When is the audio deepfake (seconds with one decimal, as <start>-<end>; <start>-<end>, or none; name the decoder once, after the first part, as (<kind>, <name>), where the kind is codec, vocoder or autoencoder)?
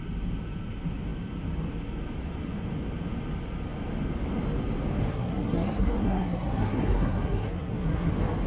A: 5.1-8.1 (codec, SNAC)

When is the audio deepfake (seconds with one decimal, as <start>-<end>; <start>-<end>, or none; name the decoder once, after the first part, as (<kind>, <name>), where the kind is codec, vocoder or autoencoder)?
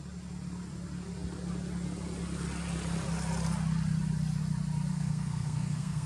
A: 4.9-6.1 (codec, SNAC)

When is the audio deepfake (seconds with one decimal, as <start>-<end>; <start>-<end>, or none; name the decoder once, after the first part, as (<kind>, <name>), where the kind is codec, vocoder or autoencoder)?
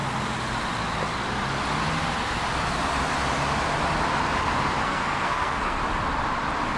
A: 4.8-5.8 (codec, SNAC)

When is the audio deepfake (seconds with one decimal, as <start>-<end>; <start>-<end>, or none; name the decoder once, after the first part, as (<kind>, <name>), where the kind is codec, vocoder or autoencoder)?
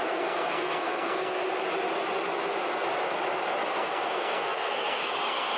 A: 0.0-1.4 (codec, SNAC); 3.7-5.6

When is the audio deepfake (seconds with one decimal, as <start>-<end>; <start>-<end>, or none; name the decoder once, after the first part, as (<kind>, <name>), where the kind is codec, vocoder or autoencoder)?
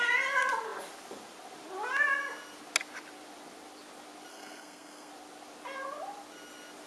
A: 4.3-5.1 (codec, SNAC)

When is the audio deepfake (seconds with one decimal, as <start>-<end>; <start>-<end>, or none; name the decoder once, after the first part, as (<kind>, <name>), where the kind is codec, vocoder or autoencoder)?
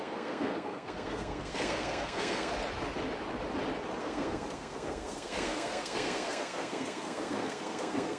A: 0.0-2.5 (codec, SNAC); 4.0-8.2